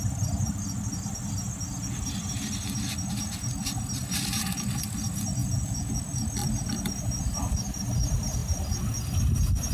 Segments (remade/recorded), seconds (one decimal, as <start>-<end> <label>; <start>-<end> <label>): 0.0-5.4 recorded; 5.4-5.9 remade; 5.9-9.7 recorded